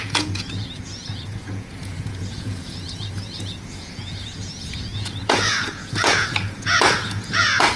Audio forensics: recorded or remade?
remade